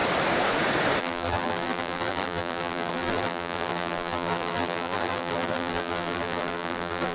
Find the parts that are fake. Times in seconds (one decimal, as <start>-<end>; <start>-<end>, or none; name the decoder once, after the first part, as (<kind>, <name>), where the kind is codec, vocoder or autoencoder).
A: 1.0-7.1 (vocoder, BigVGAN v2)